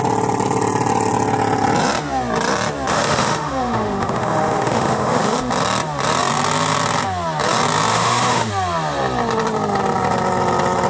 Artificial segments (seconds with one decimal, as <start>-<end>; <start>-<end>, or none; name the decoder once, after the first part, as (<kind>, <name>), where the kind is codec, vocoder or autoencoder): 2.9-5.5 (autoencoder, DAC-VAE); 7.9-8.5